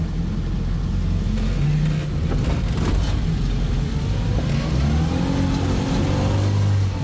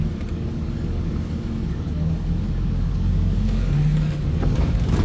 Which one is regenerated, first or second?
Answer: second